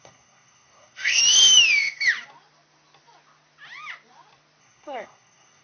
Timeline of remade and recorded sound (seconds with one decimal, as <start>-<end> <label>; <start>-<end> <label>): 0.0-1.2 remade; 1.2-4.6 recorded; 4.6-5.6 remade